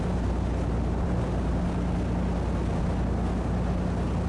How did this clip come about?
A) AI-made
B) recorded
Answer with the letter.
B